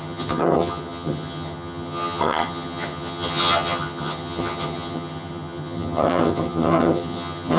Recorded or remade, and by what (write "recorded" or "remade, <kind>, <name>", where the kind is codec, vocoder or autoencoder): remade, vocoder, HiFi-GAN